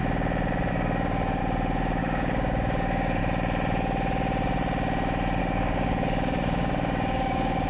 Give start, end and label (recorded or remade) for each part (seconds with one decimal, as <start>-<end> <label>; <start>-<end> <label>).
0.0-0.7 recorded; 0.7-1.4 remade; 1.4-2.0 recorded; 2.0-3.2 remade; 3.2-5.4 recorded; 5.4-7.7 remade